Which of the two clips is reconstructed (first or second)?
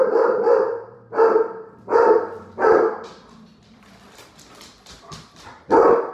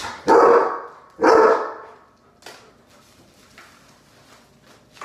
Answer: first